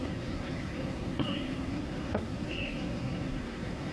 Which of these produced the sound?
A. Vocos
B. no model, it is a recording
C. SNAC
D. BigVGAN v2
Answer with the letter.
C